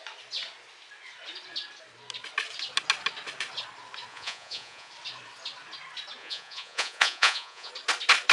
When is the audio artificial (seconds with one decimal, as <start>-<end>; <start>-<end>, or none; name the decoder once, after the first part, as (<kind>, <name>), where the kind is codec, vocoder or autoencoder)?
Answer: 4.1-4.9 (vocoder, Vocos); 6.2-7.7